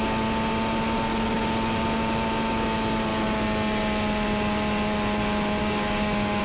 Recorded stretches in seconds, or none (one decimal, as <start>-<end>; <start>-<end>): 0.0-5.6